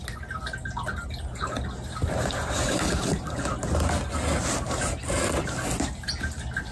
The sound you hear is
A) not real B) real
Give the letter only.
B